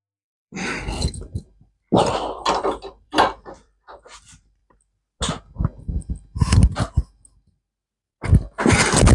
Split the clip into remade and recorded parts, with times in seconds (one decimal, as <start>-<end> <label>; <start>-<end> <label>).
0.0-4.6 remade; 4.6-9.1 recorded